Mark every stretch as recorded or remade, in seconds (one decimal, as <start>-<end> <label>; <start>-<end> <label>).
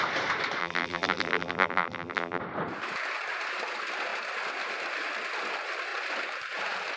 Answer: 0.0-0.6 recorded; 0.6-2.4 remade; 2.4-7.0 recorded